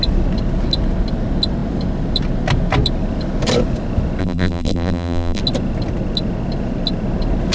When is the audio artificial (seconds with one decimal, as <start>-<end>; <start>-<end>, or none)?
4.2-5.4